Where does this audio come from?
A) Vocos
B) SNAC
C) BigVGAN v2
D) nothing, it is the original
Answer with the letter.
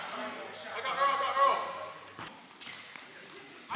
D